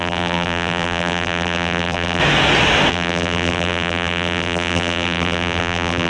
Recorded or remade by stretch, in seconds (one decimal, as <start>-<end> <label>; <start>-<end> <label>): 0.0-2.2 remade; 2.2-2.9 recorded; 2.9-6.1 remade